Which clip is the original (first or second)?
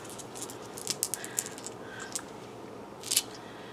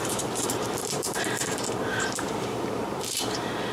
first